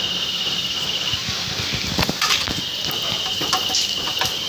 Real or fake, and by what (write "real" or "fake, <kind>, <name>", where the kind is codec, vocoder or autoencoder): real